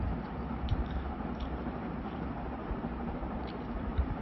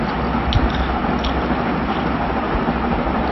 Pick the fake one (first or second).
first